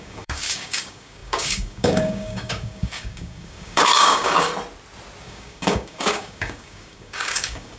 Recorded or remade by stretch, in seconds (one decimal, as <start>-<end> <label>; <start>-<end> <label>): 0.0-4.5 remade; 4.5-5.2 recorded; 5.2-7.8 remade

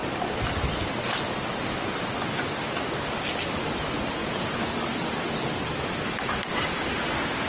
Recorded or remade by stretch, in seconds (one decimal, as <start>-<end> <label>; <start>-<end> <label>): 0.0-4.2 recorded; 4.2-4.7 remade; 4.7-7.5 recorded

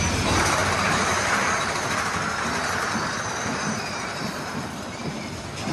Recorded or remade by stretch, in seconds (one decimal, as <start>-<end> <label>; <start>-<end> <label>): 0.0-0.6 recorded; 0.6-1.7 remade; 1.7-3.5 recorded; 3.5-5.0 remade; 5.0-5.7 recorded

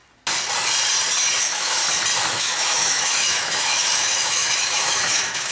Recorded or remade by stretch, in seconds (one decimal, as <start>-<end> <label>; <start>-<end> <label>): 0.0-1.4 recorded; 1.4-1.8 remade; 1.8-2.3 recorded; 2.3-5.5 remade

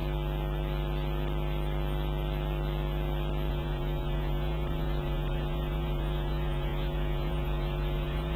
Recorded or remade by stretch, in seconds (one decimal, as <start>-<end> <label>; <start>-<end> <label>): 0.0-3.5 recorded; 3.5-8.4 remade

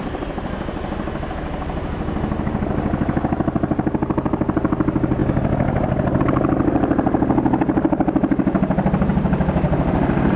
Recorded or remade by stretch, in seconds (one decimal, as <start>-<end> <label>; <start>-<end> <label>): 0.0-10.4 recorded

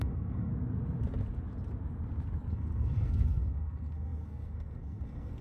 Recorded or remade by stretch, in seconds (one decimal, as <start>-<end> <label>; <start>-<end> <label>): 0.0-0.5 remade; 0.5-2.5 recorded; 2.5-5.4 remade

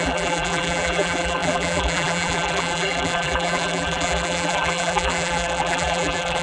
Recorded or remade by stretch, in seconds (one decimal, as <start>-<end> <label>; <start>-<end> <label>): 0.0-6.4 remade